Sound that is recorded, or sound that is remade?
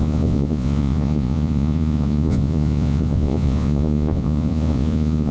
remade